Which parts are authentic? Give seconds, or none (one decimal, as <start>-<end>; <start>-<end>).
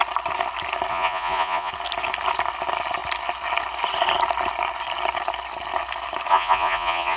0.0-0.9; 1.7-6.3